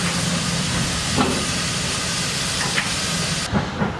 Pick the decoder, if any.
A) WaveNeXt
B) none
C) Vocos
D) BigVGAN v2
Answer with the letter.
B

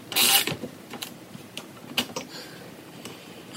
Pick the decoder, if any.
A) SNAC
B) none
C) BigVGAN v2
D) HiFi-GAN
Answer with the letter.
C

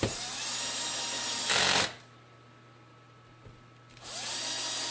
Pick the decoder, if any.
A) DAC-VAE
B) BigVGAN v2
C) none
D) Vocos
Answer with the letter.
C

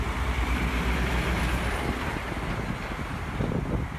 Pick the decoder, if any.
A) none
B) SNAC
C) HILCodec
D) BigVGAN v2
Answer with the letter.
A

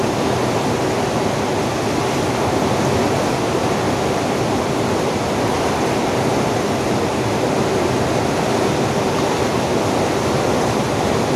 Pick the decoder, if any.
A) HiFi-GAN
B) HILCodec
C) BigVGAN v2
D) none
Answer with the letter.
D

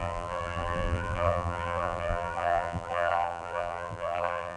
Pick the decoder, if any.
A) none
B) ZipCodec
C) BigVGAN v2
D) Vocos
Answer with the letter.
C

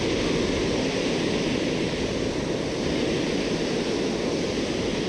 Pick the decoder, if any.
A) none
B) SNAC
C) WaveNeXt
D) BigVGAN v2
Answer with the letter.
A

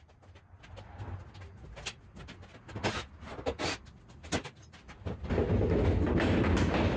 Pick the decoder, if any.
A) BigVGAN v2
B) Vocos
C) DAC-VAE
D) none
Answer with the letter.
D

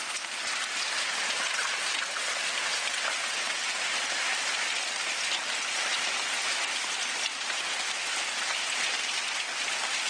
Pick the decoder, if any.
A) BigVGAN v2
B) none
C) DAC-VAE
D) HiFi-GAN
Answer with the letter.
B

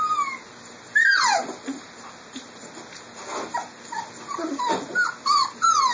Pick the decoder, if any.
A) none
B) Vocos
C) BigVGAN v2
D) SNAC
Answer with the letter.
A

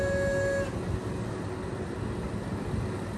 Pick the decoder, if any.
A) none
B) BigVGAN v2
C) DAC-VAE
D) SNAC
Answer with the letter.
A